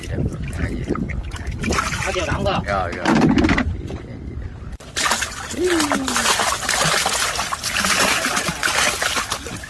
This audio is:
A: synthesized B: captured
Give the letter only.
B